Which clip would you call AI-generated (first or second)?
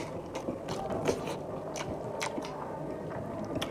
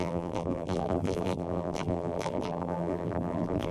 second